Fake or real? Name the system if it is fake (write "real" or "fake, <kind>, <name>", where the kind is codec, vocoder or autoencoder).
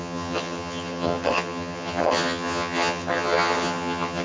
fake, vocoder, HiFi-GAN